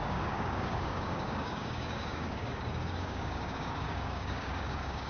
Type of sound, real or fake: fake